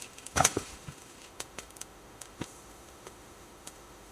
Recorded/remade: remade